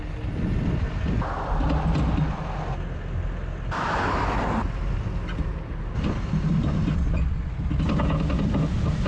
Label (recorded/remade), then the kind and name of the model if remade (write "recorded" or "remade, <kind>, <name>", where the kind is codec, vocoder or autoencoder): recorded